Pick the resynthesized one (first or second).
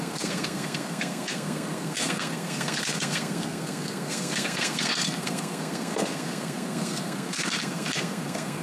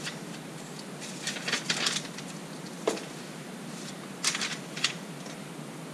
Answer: first